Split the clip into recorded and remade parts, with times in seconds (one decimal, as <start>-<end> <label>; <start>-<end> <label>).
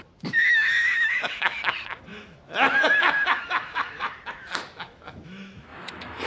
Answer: 0.0-6.3 remade